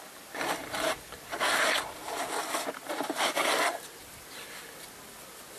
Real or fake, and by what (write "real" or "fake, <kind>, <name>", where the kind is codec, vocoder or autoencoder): real